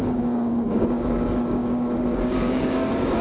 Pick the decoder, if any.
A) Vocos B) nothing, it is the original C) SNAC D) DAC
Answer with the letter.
D